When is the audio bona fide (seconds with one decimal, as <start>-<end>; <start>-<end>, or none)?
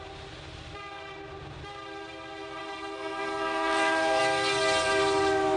0.0-2.6; 4.2-5.6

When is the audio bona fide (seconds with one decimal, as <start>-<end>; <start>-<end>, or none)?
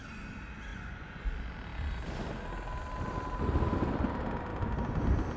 0.0-0.7; 1.2-5.4